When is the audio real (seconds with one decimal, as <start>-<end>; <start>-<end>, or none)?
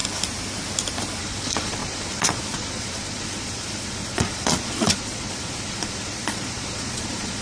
0.0-1.2